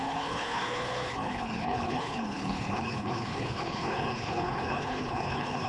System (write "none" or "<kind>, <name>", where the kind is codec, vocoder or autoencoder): codec, HILCodec